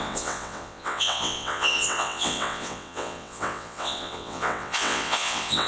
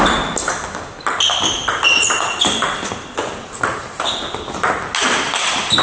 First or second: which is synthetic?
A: first